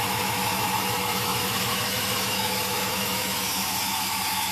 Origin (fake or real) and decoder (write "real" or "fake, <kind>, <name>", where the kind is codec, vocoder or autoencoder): fake, autoencoder, DAC-VAE